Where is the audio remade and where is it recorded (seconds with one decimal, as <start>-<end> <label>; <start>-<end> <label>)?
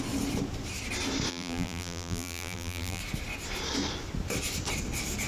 0.0-1.3 recorded; 1.3-3.0 remade; 3.0-5.3 recorded